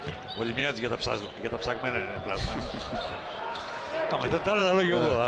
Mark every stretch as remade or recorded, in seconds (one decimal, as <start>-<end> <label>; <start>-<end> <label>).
0.0-0.6 recorded; 0.6-3.8 remade; 3.8-4.6 recorded; 4.6-5.3 remade